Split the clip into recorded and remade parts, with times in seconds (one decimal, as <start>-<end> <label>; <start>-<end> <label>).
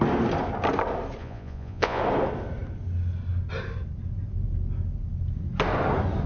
0.0-1.2 recorded; 1.2-2.0 remade; 2.0-6.3 recorded